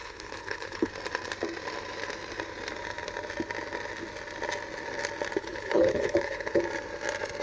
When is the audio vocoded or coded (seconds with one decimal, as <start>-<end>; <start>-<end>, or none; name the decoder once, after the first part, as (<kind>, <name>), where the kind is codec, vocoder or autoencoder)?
0.0-0.9 (codec, HILCodec); 5.4-6.6